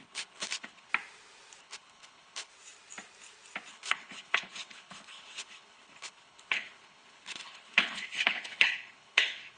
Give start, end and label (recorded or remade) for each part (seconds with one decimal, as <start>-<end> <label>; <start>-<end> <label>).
0.0-0.9 remade; 0.9-1.6 recorded; 1.6-2.5 remade; 2.5-3.7 recorded; 3.7-9.6 remade